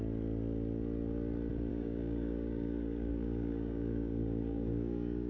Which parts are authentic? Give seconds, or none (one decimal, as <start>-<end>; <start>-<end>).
0.0-1.7